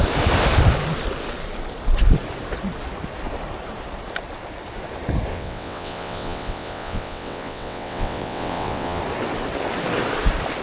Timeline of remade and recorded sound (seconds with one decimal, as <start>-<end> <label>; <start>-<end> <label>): 0.0-5.3 recorded; 5.3-9.0 remade; 9.0-10.6 recorded